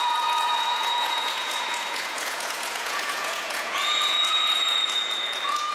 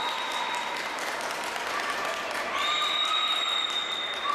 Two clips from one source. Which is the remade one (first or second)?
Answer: first